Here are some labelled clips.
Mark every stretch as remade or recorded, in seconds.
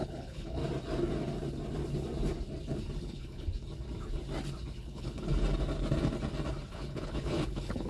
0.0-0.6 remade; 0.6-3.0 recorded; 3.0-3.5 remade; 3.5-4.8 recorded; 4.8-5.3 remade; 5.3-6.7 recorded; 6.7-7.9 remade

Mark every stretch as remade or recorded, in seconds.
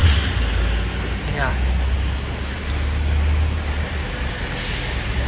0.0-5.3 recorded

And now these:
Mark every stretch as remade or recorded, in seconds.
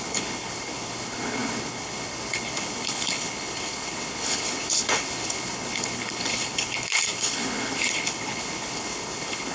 0.0-9.5 remade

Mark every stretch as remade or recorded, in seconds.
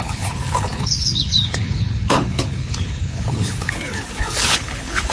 0.0-5.1 remade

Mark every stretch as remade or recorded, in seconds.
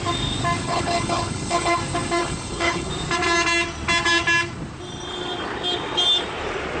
0.0-0.6 recorded; 0.6-1.8 remade; 1.8-2.2 recorded; 2.2-2.9 remade; 2.9-6.8 recorded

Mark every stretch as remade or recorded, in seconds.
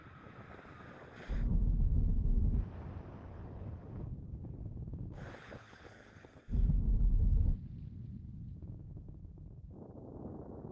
0.0-3.3 recorded; 3.3-6.4 remade; 6.4-10.7 recorded